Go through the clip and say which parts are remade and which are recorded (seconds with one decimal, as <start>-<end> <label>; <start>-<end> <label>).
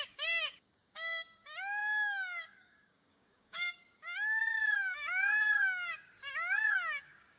0.0-7.4 remade